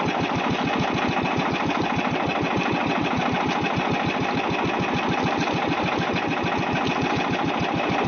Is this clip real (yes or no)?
yes